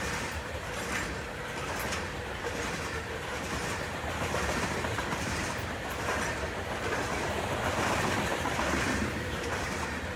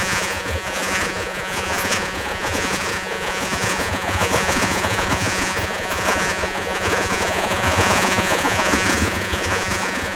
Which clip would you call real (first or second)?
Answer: first